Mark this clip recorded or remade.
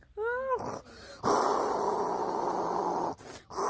recorded